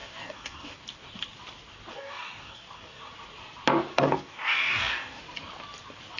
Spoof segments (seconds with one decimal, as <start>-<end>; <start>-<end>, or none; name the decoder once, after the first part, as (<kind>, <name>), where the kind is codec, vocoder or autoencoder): 0.0-0.8 (codec, DAC); 1.9-3.1; 3.9-5.2